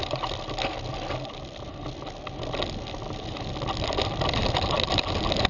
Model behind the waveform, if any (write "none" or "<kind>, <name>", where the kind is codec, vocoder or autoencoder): none